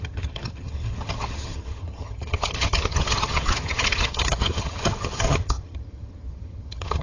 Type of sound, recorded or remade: remade